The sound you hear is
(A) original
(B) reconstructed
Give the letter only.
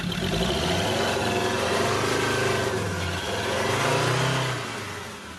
A